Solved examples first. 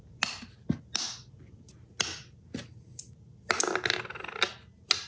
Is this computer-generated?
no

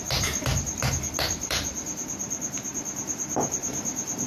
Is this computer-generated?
yes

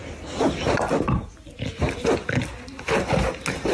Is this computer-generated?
no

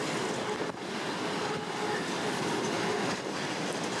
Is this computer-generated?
no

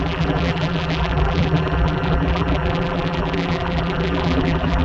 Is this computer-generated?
yes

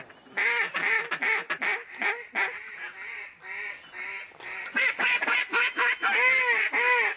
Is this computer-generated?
no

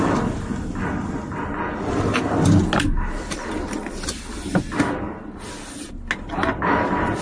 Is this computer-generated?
no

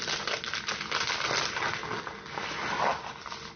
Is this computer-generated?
no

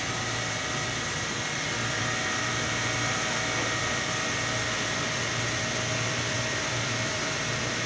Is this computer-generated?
yes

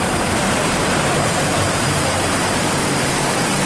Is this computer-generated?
yes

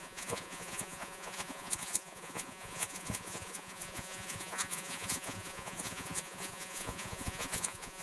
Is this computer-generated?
yes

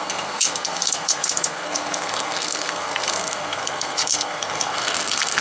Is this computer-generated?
yes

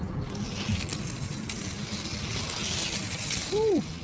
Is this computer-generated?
no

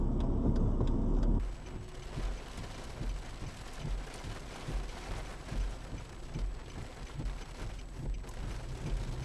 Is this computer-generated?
no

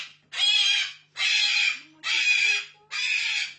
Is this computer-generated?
no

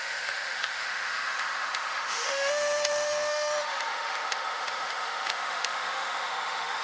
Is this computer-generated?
yes